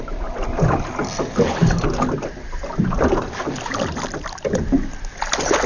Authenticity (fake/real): real